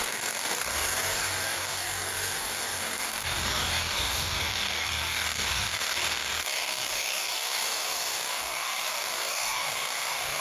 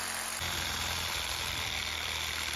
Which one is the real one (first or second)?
second